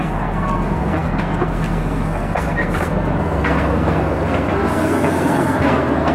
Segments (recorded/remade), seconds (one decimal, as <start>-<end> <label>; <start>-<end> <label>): 0.0-6.1 remade